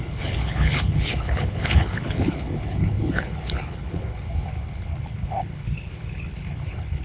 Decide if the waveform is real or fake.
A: fake